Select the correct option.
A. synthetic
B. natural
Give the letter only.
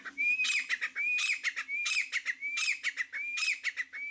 B